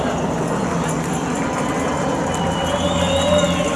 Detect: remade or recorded recorded